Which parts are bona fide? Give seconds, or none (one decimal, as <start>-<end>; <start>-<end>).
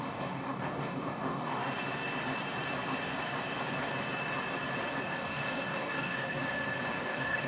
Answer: 1.6-5.0; 6.4-6.9